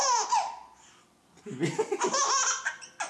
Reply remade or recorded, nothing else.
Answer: recorded